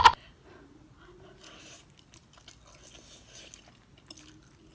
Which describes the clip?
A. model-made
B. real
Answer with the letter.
B